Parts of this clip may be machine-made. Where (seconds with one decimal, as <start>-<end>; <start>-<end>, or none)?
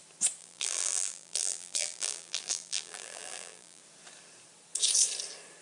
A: 0.4-3.8